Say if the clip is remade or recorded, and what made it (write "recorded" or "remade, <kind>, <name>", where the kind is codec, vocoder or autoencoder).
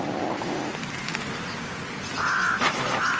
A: recorded